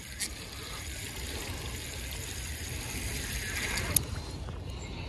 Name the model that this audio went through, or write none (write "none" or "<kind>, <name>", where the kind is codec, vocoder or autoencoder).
none